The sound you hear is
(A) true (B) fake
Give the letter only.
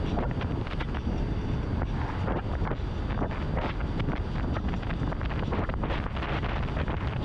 A